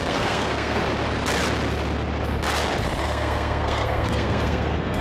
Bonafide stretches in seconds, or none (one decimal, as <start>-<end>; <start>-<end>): 0.8-3.0